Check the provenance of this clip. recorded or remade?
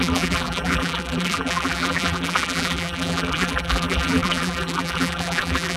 remade